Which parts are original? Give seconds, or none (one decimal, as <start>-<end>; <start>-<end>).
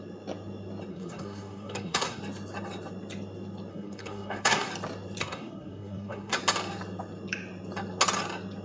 0.0-0.9; 2.2-3.7; 4.7-5.2; 6.4-8.6